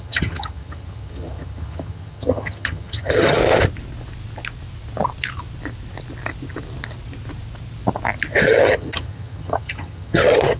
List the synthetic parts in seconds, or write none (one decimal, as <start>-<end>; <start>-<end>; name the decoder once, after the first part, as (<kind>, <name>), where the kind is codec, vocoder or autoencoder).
0.0-3.4 (vocoder, HiFi-GAN); 8.4-10.6